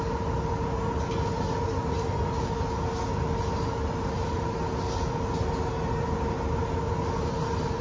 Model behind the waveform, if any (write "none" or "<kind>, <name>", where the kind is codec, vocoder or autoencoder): none